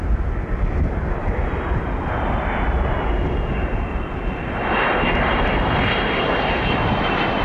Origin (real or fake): real